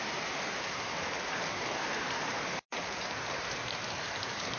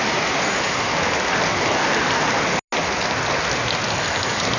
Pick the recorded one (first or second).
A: second